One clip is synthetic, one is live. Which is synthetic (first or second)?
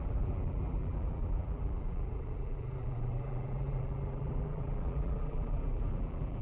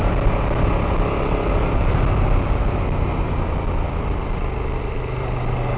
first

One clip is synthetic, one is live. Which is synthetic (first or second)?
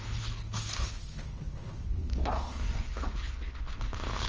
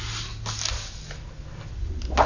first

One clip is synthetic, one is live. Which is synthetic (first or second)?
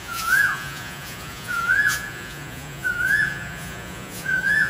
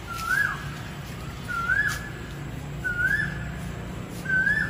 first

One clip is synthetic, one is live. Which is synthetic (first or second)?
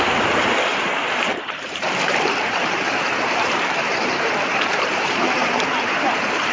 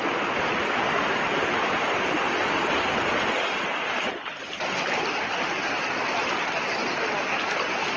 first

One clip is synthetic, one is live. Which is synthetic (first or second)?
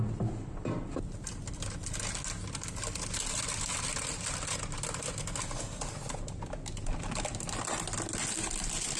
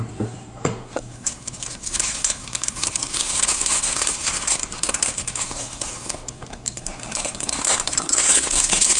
second